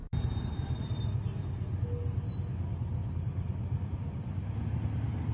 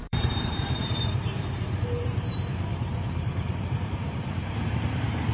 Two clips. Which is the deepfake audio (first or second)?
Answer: second